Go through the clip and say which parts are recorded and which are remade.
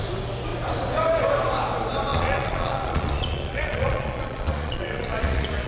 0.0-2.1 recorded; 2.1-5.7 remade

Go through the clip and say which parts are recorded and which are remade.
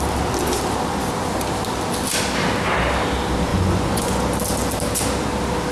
0.0-3.5 recorded; 3.5-4.2 remade; 4.2-5.7 recorded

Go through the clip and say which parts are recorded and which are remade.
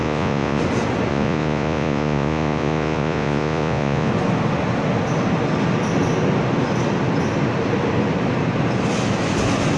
0.0-0.6 remade; 0.6-1.1 recorded; 1.1-4.1 remade; 4.1-9.8 recorded